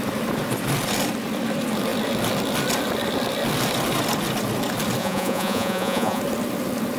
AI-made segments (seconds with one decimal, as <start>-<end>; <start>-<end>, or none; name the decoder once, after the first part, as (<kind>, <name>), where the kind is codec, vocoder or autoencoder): 5.0-6.2 (vocoder, Vocos)